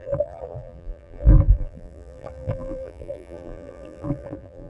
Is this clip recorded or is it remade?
remade